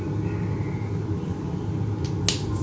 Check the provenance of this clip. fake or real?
real